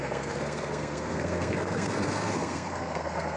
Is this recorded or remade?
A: remade